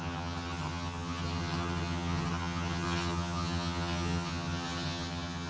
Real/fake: fake